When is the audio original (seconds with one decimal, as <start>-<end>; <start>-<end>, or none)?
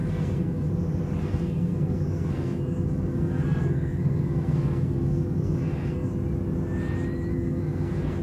0.7-1.2; 6.1-7.3